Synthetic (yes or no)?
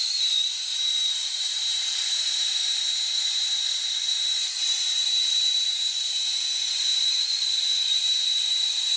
yes